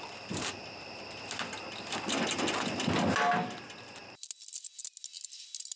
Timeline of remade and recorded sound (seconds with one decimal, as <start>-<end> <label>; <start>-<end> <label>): 0.0-5.8 recorded

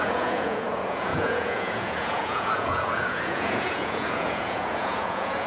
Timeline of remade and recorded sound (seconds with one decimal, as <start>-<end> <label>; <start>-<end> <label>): 0.0-5.5 remade

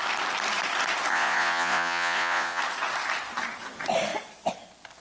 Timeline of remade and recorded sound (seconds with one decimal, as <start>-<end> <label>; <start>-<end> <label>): 0.0-1.1 recorded; 1.1-2.6 remade; 2.6-5.0 recorded